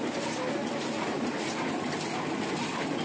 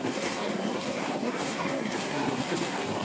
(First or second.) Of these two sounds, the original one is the first